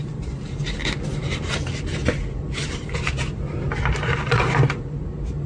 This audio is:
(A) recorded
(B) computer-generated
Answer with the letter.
A